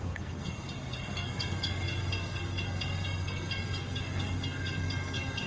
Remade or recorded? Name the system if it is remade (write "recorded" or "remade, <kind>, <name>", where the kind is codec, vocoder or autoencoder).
remade, codec, SNAC